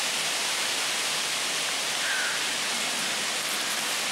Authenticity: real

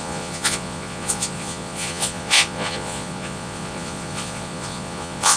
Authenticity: fake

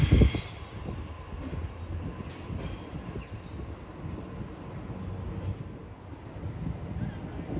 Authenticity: real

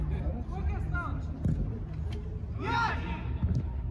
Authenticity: real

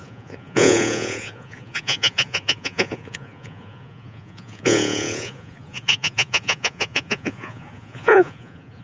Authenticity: fake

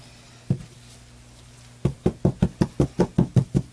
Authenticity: real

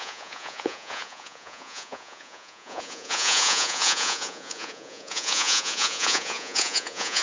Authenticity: fake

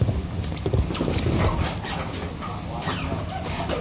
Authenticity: real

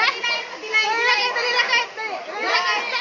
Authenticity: real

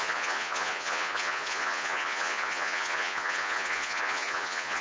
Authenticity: fake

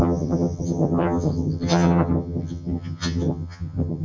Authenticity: fake